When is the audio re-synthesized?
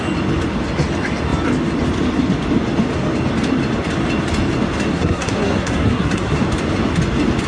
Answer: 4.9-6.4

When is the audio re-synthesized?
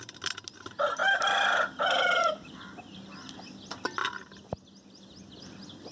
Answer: 1.0-3.5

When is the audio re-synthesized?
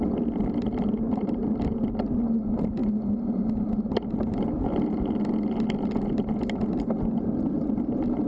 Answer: 0.0-1.4; 2.4-2.8; 6.7-8.3